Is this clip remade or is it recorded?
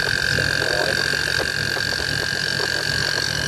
recorded